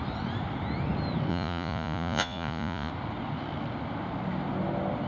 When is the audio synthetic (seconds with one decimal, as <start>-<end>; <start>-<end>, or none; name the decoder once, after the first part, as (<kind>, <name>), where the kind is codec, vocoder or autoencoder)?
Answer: 1.3-2.9 (vocoder, Vocos)